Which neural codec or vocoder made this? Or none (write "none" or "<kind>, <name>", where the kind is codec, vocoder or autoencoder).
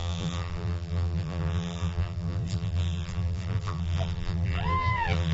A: vocoder, BigVGAN v2